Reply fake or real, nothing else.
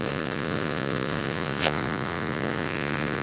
fake